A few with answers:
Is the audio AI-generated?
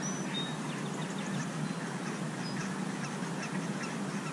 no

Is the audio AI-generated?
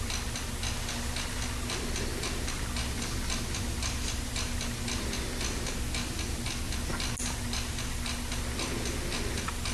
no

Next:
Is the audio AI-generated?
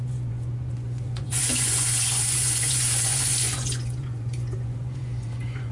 yes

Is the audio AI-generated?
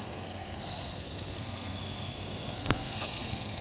yes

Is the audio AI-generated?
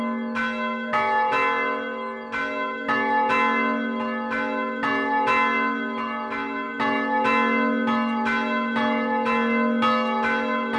no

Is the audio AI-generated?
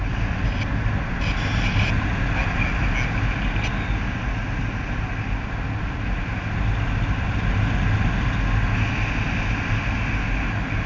no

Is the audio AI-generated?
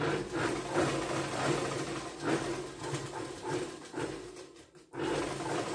no